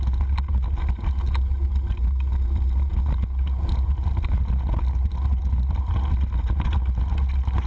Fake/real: real